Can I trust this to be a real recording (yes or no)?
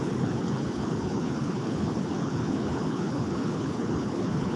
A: no